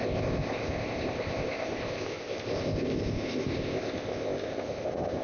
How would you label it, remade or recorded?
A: remade